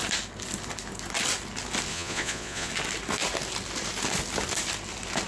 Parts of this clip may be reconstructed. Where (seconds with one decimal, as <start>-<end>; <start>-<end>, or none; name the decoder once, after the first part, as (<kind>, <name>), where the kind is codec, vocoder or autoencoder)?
1.9-2.7 (vocoder, Vocos)